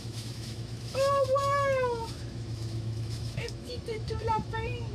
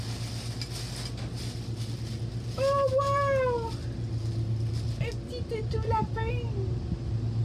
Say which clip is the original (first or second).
second